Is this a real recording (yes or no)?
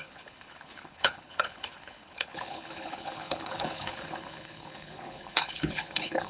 no